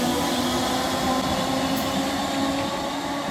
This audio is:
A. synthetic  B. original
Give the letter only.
B